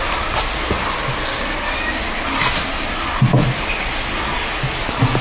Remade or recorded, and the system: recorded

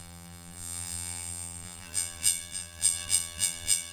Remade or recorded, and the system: remade, vocoder, BigVGAN v2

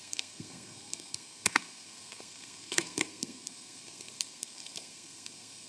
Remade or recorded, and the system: remade, codec, SNAC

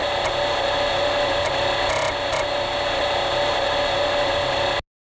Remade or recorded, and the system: recorded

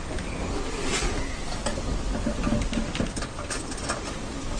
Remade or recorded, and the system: recorded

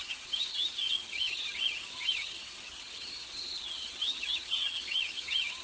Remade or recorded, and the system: remade, vocoder, HiFi-GAN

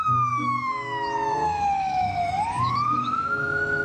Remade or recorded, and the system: remade, autoencoder, DAC-VAE